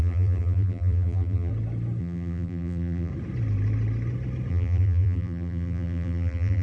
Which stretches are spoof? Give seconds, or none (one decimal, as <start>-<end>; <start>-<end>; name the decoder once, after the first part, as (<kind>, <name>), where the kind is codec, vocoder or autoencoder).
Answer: 0.0-1.5 (vocoder, BigVGAN v2); 2.0-3.1; 4.5-6.6